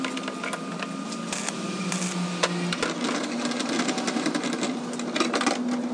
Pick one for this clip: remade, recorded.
recorded